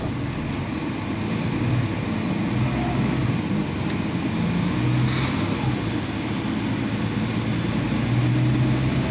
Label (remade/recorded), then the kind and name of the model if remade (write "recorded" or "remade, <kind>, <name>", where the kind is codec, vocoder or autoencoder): recorded